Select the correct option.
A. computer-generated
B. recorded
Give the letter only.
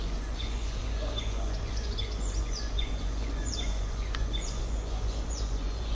A